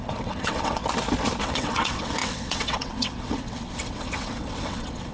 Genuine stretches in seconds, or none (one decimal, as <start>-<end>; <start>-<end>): 0.8-1.4